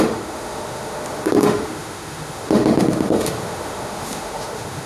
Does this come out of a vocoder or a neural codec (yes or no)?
yes